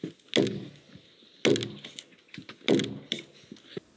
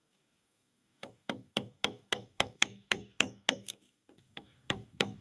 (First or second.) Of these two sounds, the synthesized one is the second